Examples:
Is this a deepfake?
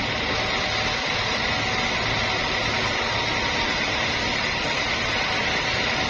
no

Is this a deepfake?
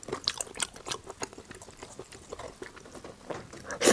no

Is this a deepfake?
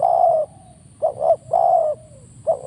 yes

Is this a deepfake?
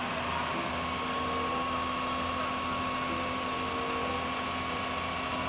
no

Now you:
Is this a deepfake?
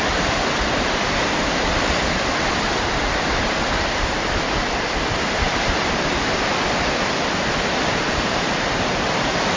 yes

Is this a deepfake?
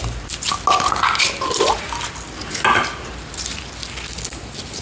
no